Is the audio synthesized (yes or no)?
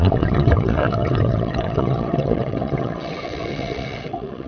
yes